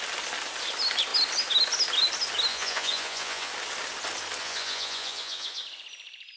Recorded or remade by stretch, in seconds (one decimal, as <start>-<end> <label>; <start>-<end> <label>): 0.0-2.5 recorded; 2.5-3.5 remade; 3.5-4.4 recorded; 4.4-5.6 remade; 5.6-6.4 recorded